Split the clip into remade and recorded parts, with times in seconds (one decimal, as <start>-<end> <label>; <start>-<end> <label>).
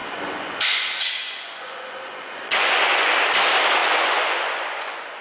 0.0-3.1 remade; 3.1-3.8 recorded; 3.8-5.2 remade